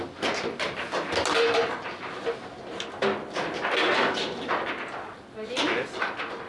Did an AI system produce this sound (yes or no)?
no